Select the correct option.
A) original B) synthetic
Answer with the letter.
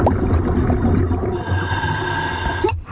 A